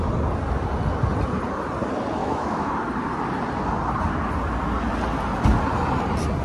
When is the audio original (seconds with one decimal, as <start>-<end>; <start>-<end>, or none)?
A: 0.0-2.2; 2.7-6.4